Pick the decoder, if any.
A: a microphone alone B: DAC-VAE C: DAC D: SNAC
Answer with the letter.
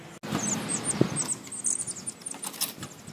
A